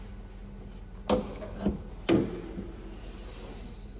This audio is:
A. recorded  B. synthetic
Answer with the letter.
A